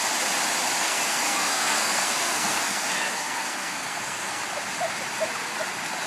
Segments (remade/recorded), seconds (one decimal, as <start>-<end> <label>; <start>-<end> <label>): 0.0-0.8 recorded; 0.8-4.4 remade; 4.4-6.1 recorded